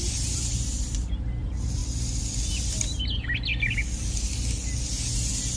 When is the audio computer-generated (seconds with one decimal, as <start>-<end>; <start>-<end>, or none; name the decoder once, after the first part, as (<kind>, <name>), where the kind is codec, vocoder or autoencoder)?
none